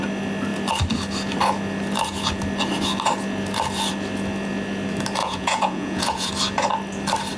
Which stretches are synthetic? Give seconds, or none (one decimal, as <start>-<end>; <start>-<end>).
5.2-6.3

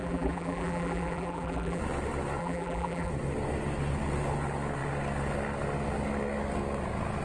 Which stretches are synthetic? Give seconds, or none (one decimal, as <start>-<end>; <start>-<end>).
0.0-1.8; 2.4-3.1

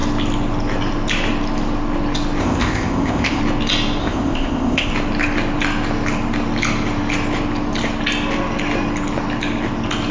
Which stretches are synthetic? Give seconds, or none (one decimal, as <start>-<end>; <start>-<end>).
2.4-3.4; 4.0-4.9

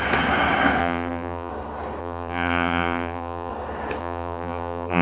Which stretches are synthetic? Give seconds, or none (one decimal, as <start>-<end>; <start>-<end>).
0.8-1.5; 2.0-3.5; 4.0-5.0

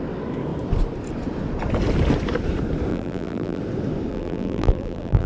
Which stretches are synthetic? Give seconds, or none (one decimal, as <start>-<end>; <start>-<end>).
2.9-3.6; 4.1-5.3

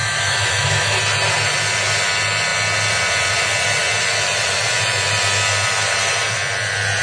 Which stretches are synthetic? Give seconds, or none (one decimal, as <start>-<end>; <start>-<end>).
0.0-1.0

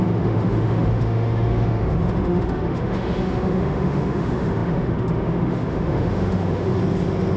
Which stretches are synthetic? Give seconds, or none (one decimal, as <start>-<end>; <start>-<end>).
0.0-6.8

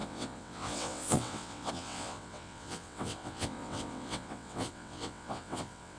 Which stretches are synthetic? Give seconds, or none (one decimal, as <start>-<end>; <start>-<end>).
0.0-6.0